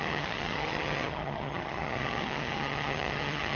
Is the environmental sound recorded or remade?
remade